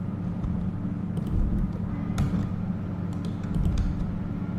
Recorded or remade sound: recorded